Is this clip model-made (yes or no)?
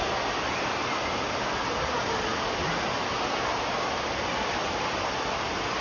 no